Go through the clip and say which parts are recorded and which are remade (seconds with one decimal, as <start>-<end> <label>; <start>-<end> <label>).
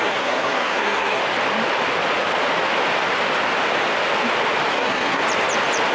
0.0-1.2 remade; 1.2-4.7 recorded; 4.7-5.2 remade; 5.2-5.9 recorded